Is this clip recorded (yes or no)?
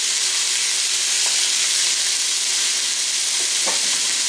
yes